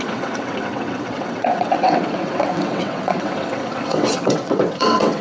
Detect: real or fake fake